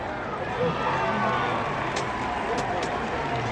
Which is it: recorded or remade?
recorded